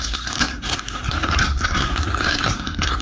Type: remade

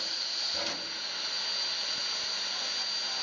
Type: recorded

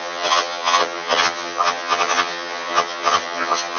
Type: remade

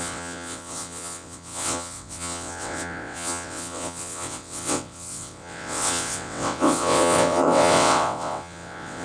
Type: remade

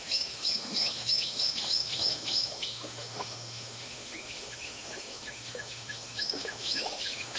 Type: remade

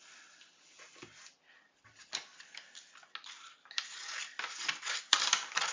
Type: recorded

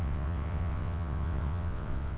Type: remade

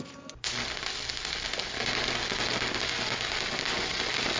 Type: recorded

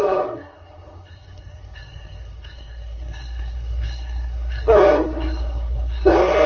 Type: remade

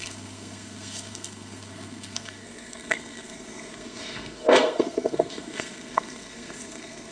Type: remade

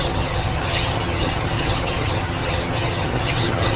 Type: remade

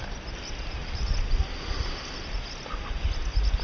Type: recorded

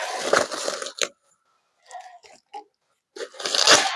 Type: recorded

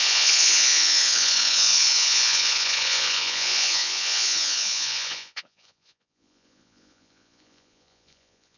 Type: remade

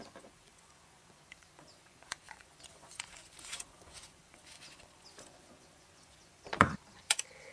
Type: remade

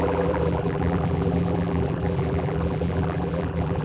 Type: remade